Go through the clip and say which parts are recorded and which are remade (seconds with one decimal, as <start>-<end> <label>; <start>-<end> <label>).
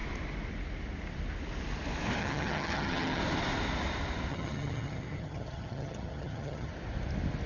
0.0-2.2 recorded; 2.2-3.2 remade; 3.2-4.3 recorded; 4.3-6.7 remade; 6.7-7.5 recorded